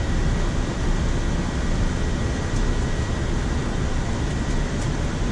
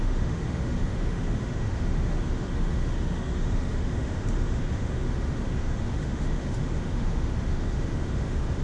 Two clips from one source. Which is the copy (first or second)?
second